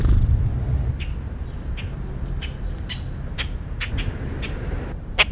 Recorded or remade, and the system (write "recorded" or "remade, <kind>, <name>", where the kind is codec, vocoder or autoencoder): recorded